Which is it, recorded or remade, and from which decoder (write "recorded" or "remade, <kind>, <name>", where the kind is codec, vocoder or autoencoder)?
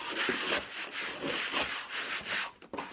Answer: recorded